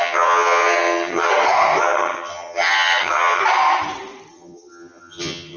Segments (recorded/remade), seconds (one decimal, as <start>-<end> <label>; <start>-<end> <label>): 0.0-1.3 remade; 1.3-1.8 recorded; 1.8-3.4 remade; 3.4-4.3 recorded; 4.3-5.6 remade